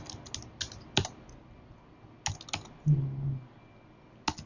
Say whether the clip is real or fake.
real